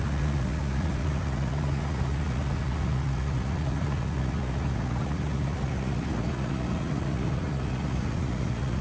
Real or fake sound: fake